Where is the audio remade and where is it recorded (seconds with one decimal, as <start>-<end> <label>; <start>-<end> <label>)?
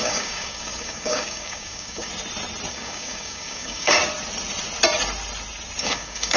0.0-2.1 remade; 2.1-2.7 recorded; 2.7-4.0 remade; 4.0-5.8 recorded; 5.8-6.4 remade